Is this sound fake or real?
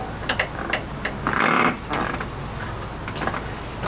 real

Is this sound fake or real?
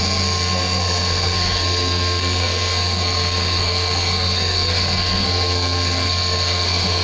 fake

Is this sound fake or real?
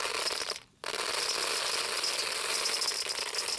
real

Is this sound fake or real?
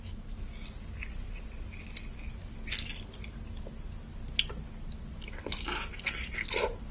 real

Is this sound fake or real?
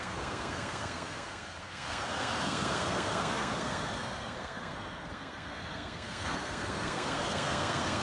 fake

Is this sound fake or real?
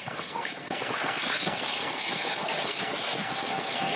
fake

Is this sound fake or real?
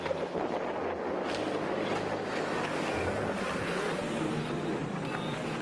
real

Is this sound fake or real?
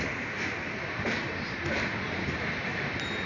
real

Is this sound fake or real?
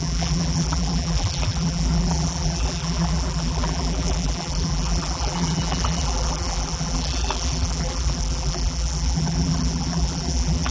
fake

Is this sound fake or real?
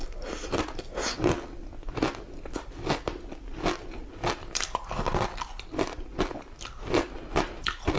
real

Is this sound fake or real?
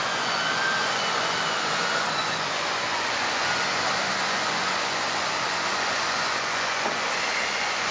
fake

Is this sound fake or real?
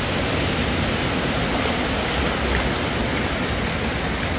real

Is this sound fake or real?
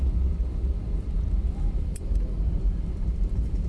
fake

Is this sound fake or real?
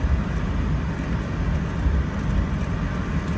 real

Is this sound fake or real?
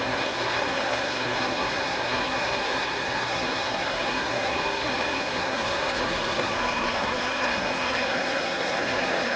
fake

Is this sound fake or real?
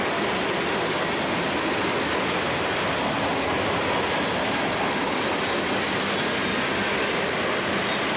real